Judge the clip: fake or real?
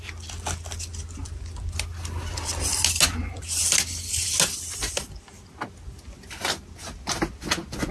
real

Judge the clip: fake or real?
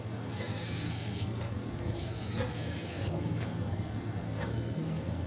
fake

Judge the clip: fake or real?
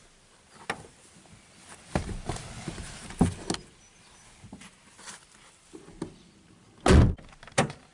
real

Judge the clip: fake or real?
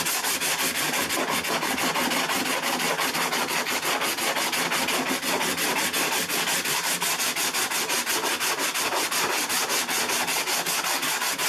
real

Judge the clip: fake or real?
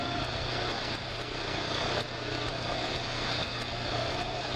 fake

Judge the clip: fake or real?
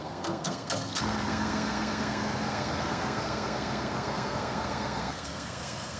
fake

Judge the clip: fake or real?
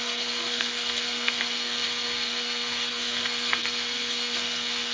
fake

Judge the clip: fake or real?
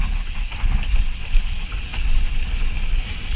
real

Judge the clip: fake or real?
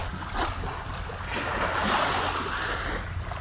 real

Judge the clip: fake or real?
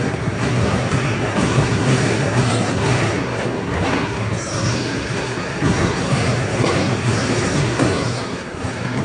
fake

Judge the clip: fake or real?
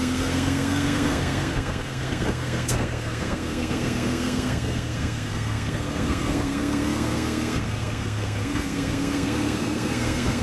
fake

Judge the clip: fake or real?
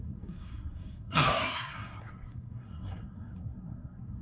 fake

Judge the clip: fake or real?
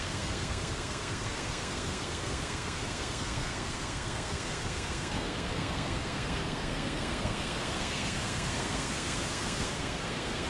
fake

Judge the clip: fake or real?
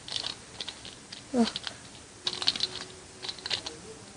real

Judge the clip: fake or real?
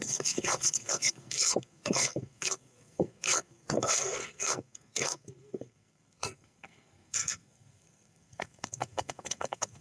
fake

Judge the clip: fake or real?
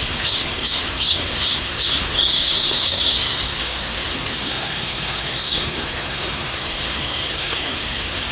fake